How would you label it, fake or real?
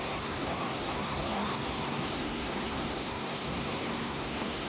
fake